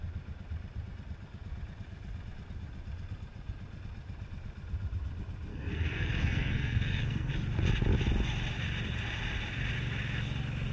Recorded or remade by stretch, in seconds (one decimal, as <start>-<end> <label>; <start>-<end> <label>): 0.0-5.5 recorded; 5.5-7.3 remade; 7.3-10.7 recorded